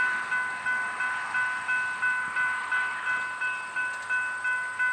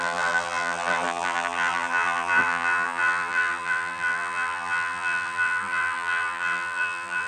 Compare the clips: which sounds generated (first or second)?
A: second